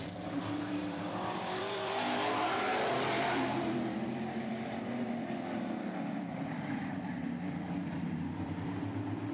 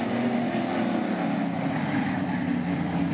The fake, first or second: first